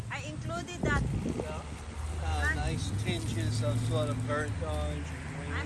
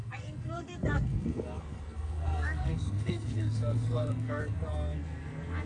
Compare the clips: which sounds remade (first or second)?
second